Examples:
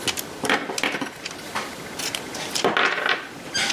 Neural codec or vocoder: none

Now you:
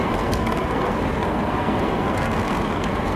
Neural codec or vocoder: codec, SNAC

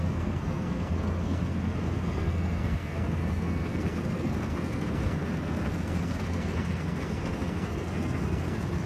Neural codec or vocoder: codec, SNAC